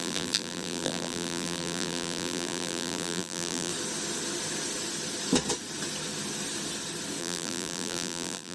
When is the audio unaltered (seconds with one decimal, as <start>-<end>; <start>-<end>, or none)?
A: 3.7-7.2